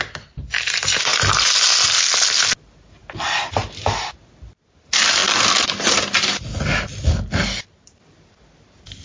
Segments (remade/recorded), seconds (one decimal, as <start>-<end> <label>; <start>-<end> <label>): 0.0-9.0 recorded